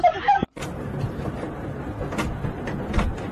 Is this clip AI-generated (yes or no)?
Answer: no